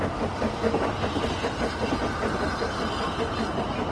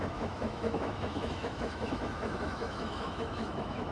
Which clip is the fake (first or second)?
second